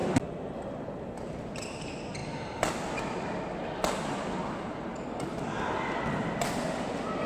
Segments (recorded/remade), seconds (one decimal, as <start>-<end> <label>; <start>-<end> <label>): 0.0-7.3 recorded